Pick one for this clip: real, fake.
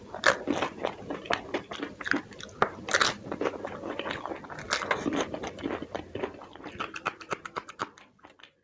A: real